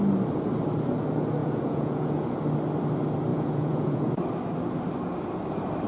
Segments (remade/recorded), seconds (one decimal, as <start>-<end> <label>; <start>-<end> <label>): 0.0-1.4 recorded; 1.4-2.4 remade; 2.4-3.3 recorded; 3.3-4.2 remade; 4.2-5.9 recorded